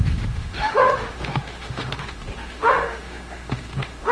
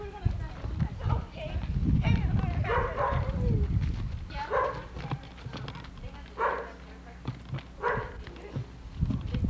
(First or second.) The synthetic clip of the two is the first